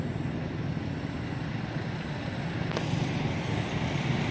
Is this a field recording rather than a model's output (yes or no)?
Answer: yes